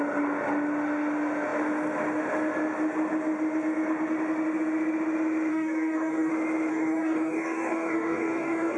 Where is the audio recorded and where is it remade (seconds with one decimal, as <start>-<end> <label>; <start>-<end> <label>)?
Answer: 0.0-5.5 recorded; 5.5-6.3 remade; 6.3-6.7 recorded; 6.7-8.8 remade